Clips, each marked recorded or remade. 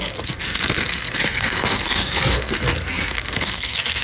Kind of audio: remade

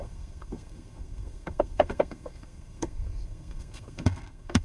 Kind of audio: remade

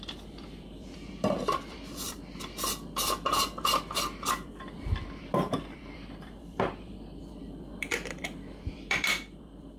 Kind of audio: remade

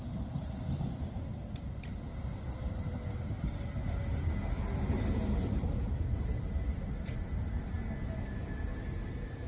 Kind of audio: recorded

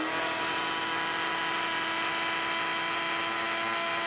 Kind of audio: recorded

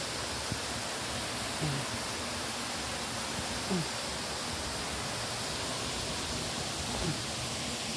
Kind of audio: recorded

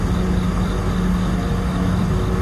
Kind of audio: recorded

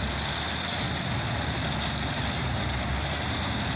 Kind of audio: recorded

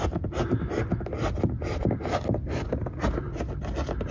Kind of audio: recorded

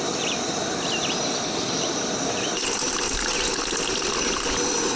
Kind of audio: recorded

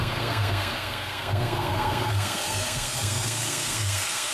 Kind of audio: remade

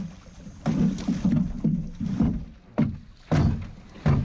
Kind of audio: recorded